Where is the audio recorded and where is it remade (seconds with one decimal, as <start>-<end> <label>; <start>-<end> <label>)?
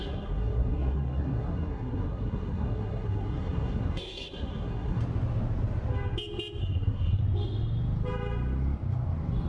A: 0.0-5.0 remade; 5.0-6.6 recorded; 6.6-7.2 remade; 7.2-9.5 recorded